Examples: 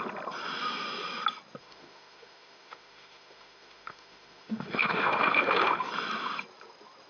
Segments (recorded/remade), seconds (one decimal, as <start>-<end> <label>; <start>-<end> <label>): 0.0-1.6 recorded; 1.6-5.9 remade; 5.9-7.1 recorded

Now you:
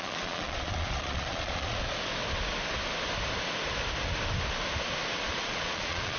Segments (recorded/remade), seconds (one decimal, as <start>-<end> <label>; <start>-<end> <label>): 0.0-1.8 remade; 1.8-5.4 recorded; 5.4-6.2 remade

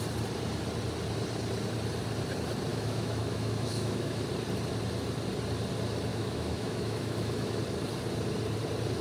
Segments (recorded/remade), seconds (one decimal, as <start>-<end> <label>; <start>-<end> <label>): 0.0-2.7 recorded; 2.7-4.2 remade; 4.2-6.1 recorded; 6.1-7.6 remade; 7.6-9.0 recorded

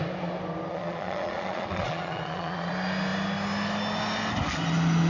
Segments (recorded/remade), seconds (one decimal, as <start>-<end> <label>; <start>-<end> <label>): 0.0-0.7 recorded; 0.7-2.7 remade; 2.7-5.1 recorded

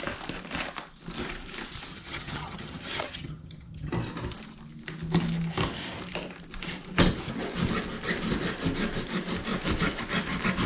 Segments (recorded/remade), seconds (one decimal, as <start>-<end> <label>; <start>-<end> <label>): 0.0-1.9 recorded; 1.9-3.9 remade; 3.9-10.7 recorded

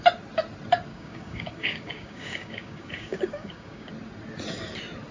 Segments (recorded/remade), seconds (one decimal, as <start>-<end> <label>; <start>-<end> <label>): 0.0-0.9 recorded; 0.9-3.9 remade; 3.9-5.1 recorded

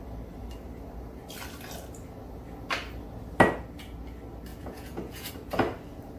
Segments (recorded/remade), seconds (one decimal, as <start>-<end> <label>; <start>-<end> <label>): 0.0-4.5 recorded; 4.5-5.3 remade; 5.3-6.2 recorded